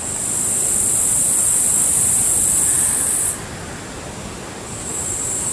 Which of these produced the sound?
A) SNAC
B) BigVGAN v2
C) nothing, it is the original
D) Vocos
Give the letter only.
C